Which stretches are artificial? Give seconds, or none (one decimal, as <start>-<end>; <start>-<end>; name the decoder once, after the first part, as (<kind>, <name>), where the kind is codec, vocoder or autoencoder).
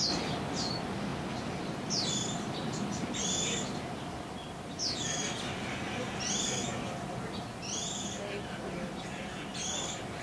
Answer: none